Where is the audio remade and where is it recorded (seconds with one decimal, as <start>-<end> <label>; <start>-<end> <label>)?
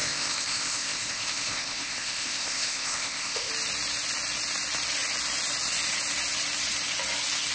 0.0-3.5 remade; 3.5-7.5 recorded